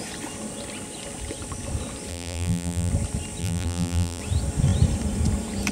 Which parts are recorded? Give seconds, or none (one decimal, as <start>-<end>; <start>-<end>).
0.0-2.1; 2.9-3.4; 4.2-5.7